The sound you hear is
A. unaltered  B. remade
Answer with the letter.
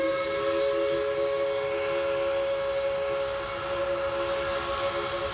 A